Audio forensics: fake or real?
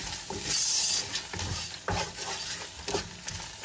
real